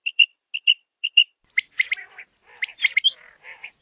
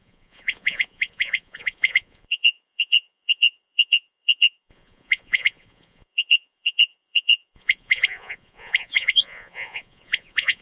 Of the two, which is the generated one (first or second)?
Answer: second